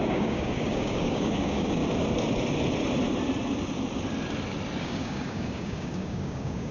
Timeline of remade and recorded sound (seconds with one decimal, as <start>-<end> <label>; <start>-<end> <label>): 0.0-1.8 remade; 1.8-4.8 recorded; 4.8-6.7 remade